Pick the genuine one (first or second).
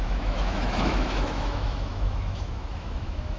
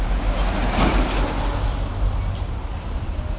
second